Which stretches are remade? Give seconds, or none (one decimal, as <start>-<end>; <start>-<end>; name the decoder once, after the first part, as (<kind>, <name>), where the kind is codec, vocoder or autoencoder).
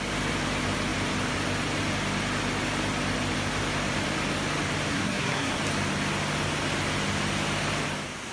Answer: 4.9-5.6 (codec, SNAC)